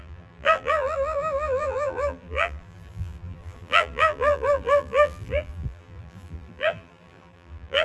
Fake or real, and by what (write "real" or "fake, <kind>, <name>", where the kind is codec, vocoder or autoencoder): fake, vocoder, BigVGAN v2